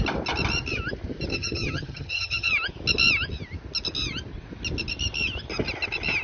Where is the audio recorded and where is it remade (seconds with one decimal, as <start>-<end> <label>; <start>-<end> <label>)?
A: 0.0-1.3 recorded; 1.3-2.5 remade; 2.5-6.2 recorded